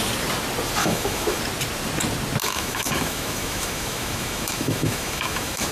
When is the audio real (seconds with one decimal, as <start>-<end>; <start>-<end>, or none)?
0.0-0.8; 1.4-2.4